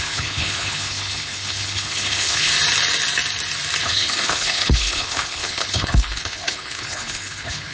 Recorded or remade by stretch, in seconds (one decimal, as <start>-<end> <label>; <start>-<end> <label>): 0.0-2.5 remade; 2.5-3.8 recorded; 3.8-7.7 remade